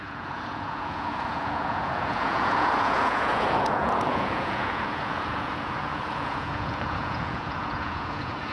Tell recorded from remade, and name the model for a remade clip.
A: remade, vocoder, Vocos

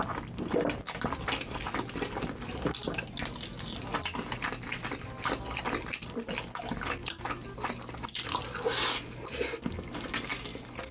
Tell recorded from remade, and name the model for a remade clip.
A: recorded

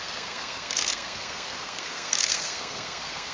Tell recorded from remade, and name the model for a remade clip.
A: remade, codec, SNAC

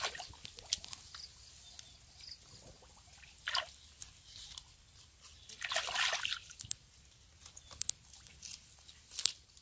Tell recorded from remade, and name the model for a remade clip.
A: recorded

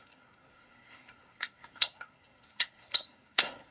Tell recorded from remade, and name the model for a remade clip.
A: remade, codec, SNAC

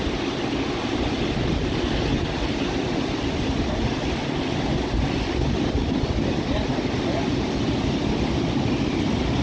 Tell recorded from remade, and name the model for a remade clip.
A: recorded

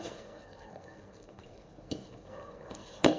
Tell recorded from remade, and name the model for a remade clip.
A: remade, codec, SNAC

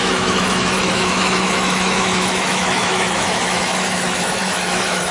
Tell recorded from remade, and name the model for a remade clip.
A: remade, autoencoder, DAC-VAE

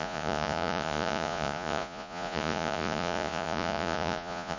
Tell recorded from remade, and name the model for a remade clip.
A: remade, vocoder, Vocos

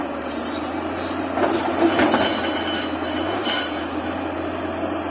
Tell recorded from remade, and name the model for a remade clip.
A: recorded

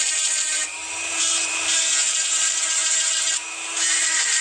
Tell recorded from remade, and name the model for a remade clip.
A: remade, vocoder, BigVGAN v2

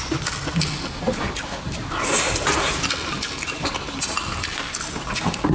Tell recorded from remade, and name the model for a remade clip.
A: recorded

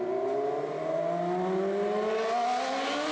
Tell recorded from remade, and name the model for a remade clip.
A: recorded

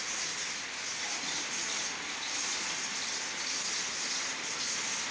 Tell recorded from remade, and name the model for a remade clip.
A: recorded